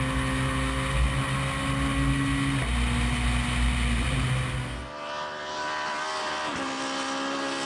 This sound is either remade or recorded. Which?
recorded